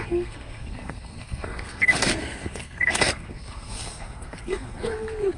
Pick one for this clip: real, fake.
fake